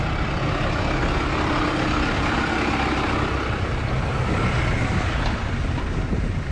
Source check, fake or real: real